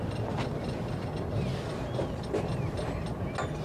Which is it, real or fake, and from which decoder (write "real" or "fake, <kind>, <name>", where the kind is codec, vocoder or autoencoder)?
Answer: real